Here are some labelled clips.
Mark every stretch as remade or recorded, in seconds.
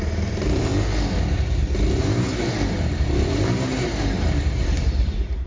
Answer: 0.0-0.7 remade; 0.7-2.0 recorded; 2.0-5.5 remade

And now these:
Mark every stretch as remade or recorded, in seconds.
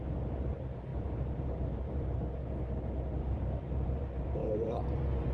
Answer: 0.0-2.4 remade; 2.4-3.2 recorded; 3.2-5.3 remade